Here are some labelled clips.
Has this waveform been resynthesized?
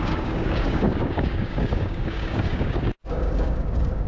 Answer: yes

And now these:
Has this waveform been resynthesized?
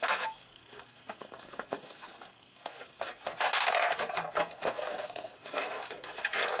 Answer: yes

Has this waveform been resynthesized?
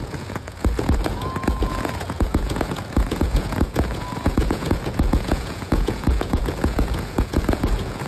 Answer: yes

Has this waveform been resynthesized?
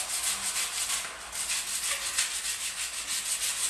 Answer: no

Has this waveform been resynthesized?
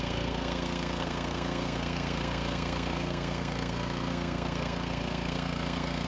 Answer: yes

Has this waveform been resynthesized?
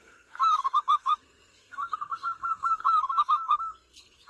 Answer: yes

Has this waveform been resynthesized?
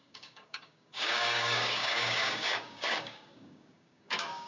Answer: yes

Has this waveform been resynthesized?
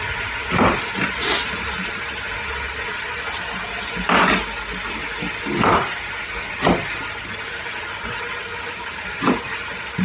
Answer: no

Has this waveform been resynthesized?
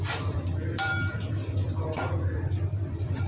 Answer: yes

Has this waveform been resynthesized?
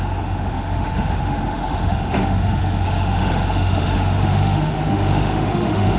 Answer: yes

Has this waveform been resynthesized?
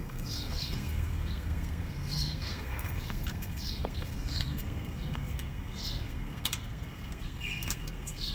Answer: yes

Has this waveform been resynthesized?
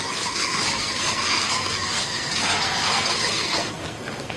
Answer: yes